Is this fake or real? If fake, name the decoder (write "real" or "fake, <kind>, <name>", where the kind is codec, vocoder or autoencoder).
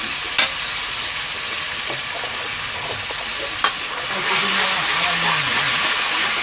real